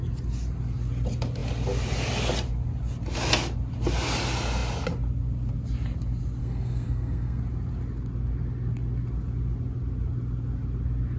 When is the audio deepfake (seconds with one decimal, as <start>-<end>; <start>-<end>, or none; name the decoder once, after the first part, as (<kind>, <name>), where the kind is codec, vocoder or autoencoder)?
6.4-7.4 (codec, SNAC)